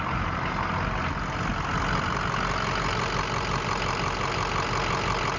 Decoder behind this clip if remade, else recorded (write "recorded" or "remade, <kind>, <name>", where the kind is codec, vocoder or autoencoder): recorded